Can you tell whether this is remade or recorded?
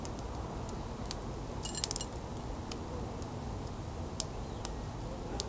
recorded